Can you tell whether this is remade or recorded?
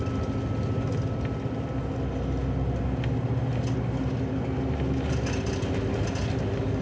recorded